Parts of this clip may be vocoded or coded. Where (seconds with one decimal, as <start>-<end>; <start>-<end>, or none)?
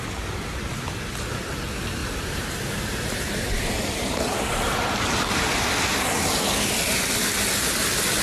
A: 2.0-6.3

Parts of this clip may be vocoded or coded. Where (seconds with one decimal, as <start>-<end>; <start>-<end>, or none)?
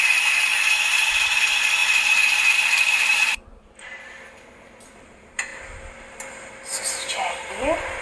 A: 0.0-5.5; 7.5-8.0